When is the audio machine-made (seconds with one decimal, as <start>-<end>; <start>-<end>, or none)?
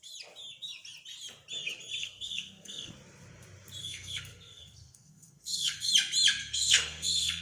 2.0-2.9; 3.8-5.9; 6.4-7.4